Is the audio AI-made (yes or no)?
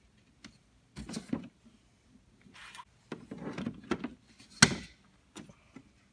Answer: no